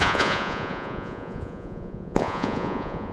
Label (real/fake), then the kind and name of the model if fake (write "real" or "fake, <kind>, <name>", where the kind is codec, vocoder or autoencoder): fake, vocoder, Vocos